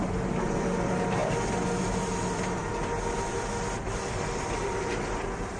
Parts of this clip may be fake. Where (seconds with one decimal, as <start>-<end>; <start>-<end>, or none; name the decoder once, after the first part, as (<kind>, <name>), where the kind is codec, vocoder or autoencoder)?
0.0-1.2 (vocoder, BigVGAN v2); 2.2-2.6; 4.0-5.6